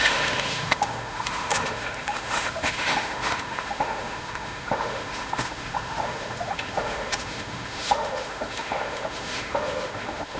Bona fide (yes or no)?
no